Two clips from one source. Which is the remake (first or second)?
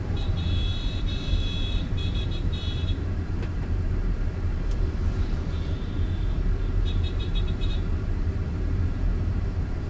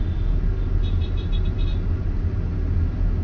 first